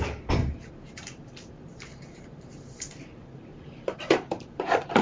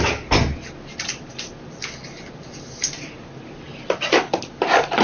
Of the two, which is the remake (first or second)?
first